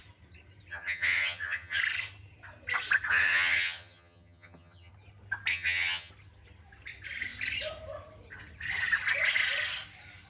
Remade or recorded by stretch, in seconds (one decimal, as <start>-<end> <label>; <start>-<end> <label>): 0.0-0.7 recorded; 0.7-1.8 remade; 1.8-3.1 recorded; 3.1-4.9 remade; 4.9-5.5 recorded; 5.5-6.1 remade; 6.1-10.3 recorded